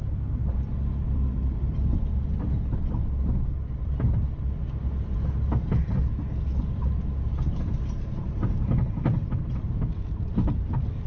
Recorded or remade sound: recorded